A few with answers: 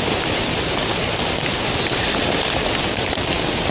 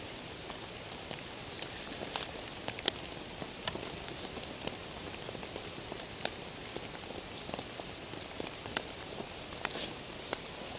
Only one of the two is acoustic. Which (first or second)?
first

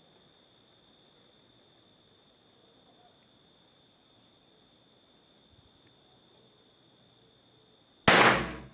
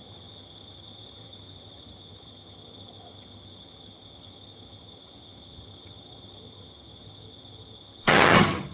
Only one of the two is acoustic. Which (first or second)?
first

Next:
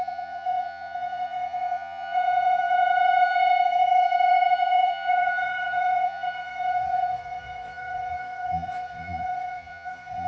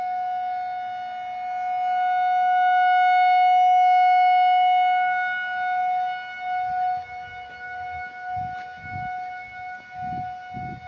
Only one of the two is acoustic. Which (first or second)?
second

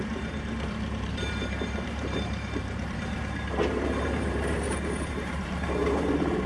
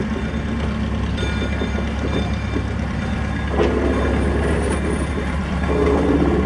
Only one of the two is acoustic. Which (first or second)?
second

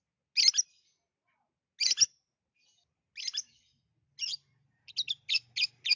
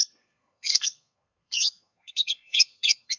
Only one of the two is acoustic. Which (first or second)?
first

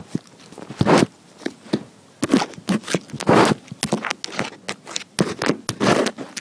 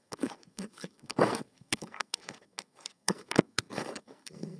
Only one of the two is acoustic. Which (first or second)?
first